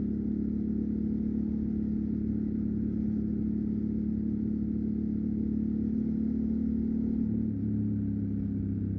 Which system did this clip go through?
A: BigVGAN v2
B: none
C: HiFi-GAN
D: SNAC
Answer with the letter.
B